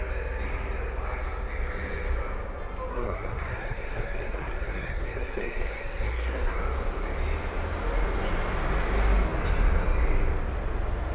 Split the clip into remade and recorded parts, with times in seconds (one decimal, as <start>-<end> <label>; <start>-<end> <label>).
0.0-2.9 recorded; 2.9-6.6 remade; 6.6-11.1 recorded